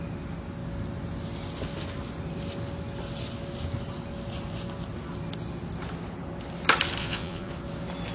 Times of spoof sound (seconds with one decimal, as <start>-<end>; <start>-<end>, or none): 7.0-7.5